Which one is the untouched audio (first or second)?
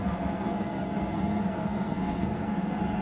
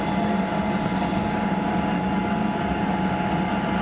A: second